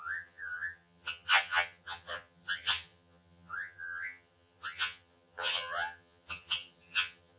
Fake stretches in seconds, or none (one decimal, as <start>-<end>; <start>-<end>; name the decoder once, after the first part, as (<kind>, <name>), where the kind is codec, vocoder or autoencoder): 0.0-7.4 (vocoder, HiFi-GAN)